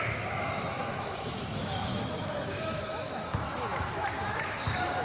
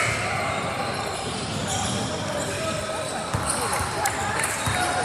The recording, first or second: second